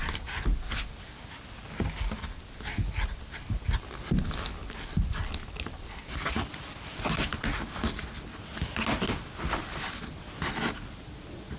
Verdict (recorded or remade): recorded